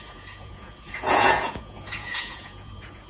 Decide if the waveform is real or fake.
fake